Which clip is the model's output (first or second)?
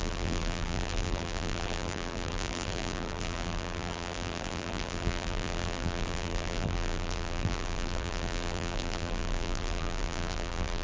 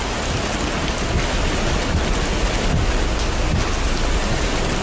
first